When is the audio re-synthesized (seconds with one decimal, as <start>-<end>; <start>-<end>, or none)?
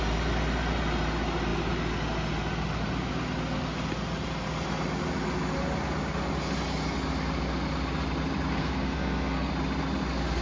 8.6-9.5